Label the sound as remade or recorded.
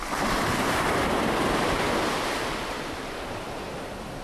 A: recorded